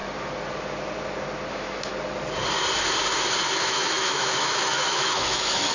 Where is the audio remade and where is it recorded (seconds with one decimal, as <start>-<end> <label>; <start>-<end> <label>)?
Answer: 0.0-1.5 recorded; 1.5-1.9 remade; 1.9-3.6 recorded; 3.6-5.7 remade